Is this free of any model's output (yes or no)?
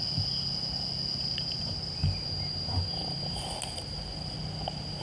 yes